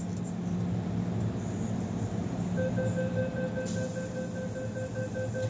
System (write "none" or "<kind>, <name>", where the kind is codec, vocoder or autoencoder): none